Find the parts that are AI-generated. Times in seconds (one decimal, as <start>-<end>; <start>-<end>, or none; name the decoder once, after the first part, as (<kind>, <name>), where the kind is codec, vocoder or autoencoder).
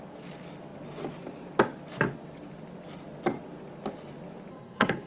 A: 4.5-5.1 (codec, SNAC)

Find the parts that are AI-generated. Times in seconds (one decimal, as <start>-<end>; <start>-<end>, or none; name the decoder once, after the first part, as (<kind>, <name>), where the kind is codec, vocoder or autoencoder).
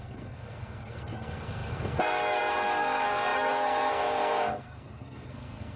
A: 0.0-5.8 (codec, SNAC)